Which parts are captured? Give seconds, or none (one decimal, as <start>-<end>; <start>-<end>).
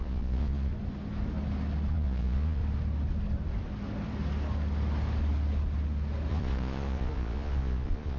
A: 0.7-1.9; 2.6-6.3